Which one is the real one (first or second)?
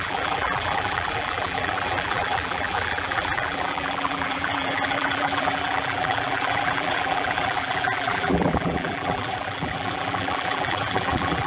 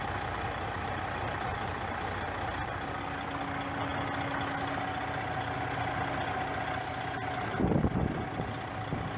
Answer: second